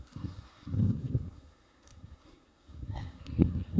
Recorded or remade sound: remade